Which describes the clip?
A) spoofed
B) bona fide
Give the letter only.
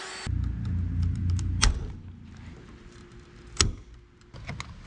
B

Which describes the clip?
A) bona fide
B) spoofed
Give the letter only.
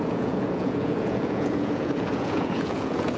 B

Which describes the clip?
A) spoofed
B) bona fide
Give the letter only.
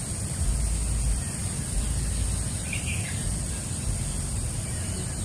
B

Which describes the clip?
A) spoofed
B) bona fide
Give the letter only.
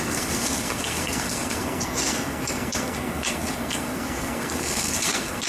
A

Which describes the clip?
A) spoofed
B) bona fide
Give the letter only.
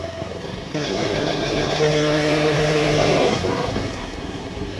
A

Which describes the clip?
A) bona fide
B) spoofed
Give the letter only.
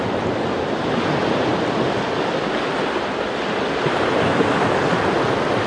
A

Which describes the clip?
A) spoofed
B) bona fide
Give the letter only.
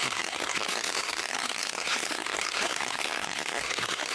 A